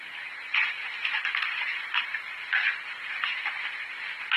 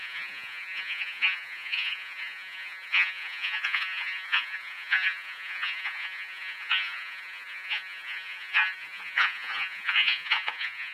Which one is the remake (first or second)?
second